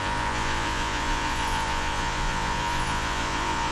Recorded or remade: remade